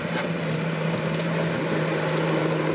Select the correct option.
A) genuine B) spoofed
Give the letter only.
A